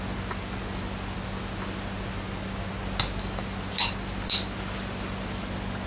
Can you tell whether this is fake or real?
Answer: real